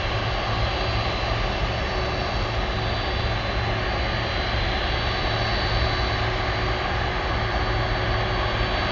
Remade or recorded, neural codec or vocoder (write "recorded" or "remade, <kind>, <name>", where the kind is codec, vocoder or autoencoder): recorded